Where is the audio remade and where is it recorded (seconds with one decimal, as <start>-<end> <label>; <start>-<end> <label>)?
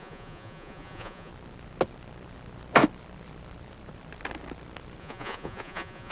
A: 0.0-1.3 remade; 1.3-5.0 recorded; 5.0-6.1 remade